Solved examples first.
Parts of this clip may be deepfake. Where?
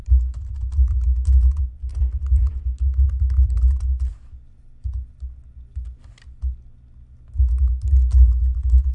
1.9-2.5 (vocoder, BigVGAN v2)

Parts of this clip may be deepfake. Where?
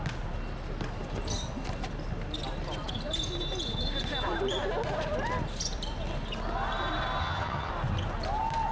7.2-7.7 (vocoder, HiFi-GAN)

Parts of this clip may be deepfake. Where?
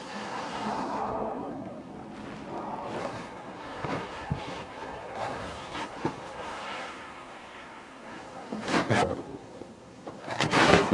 0.0-1.9 (codec, SNAC); 3.0-10.9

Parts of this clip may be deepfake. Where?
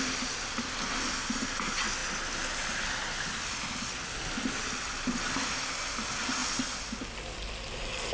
none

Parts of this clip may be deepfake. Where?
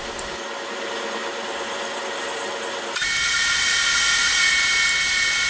none